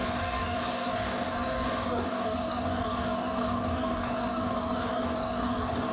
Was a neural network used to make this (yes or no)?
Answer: yes